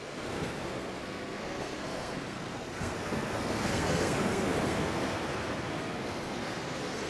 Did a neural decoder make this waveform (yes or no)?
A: yes